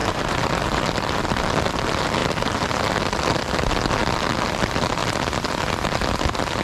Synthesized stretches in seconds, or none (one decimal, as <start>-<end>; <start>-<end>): 0.0-1.2; 2.2-2.9